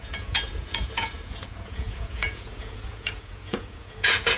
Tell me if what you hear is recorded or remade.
remade